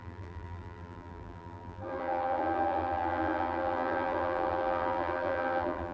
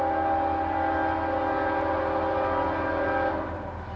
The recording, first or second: second